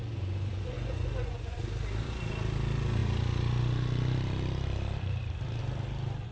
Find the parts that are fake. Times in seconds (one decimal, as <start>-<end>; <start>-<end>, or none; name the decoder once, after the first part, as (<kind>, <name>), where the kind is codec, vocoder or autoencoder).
0.5-1.6 (vocoder, Vocos)